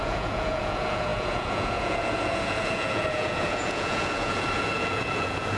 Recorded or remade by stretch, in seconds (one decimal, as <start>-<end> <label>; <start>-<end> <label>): 0.0-5.6 remade